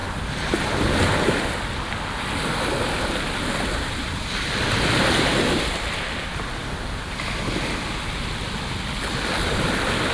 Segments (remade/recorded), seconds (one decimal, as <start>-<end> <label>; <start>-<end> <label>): 0.0-10.1 recorded